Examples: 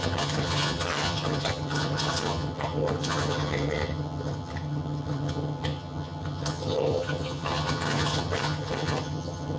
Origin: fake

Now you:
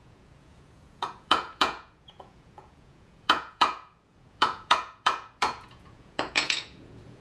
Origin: fake